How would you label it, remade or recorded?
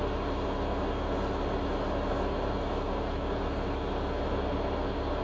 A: recorded